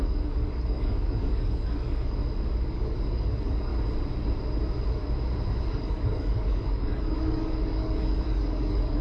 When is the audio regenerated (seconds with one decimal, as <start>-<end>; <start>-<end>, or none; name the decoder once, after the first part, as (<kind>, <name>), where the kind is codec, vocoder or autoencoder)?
0.0-2.2 (codec, DAC); 2.7-3.7; 5.7-9.0